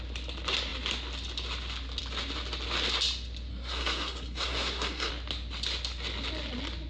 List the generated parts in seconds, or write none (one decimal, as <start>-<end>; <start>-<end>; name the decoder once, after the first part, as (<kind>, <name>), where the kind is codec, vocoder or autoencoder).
3.5-5.1 (codec, SNAC)